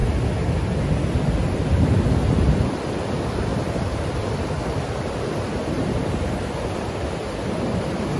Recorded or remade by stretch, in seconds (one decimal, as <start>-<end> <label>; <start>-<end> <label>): 0.0-1.3 recorded; 1.3-8.2 remade